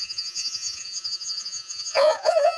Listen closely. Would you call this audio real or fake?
fake